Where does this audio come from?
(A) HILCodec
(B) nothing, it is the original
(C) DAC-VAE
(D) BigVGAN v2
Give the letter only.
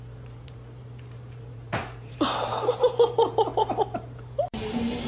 D